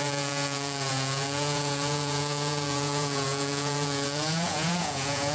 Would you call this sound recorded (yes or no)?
no